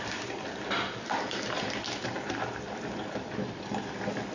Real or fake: fake